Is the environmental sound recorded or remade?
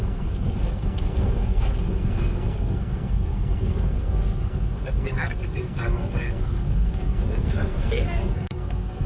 remade